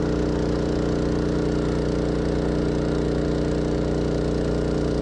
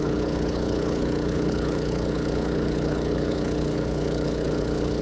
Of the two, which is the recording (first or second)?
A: first